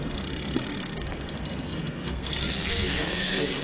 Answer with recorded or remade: remade